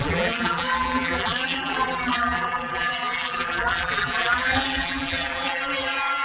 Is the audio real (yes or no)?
no